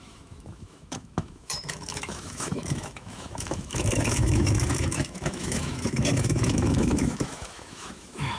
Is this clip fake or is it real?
fake